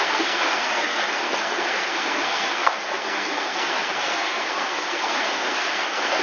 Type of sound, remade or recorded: remade